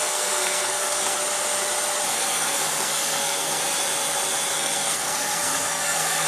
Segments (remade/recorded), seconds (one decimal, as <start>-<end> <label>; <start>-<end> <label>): 0.0-1.2 remade; 1.2-2.1 recorded; 2.1-3.6 remade; 3.6-4.5 recorded; 4.5-6.3 remade